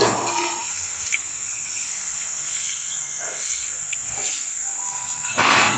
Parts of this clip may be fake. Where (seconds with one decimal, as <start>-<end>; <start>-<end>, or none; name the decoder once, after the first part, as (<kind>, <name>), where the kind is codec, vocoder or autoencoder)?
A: 0.0-5.8 (codec, SNAC)

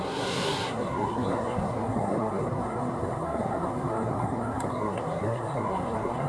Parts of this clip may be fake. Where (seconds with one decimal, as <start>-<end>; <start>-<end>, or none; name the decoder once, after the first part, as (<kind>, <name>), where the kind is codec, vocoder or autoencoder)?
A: 0.0-6.3 (codec, SNAC)

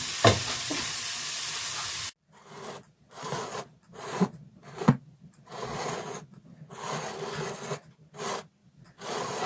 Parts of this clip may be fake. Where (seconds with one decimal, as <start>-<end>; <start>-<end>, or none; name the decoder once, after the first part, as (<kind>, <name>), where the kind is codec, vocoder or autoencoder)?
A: 0.4-1.4 (vocoder, Vocos); 2.8-6.6; 8.6-9.5